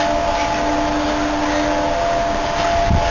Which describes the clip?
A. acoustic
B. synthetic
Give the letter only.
A